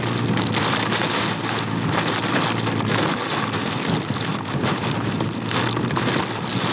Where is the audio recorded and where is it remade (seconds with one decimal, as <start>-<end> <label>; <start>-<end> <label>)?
0.0-6.7 recorded